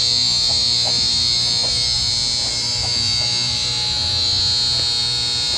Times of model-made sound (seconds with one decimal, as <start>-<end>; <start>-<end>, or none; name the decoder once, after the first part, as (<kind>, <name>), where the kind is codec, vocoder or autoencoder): 0.0-2.1 (autoencoder, DAC-VAE); 2.5-4.4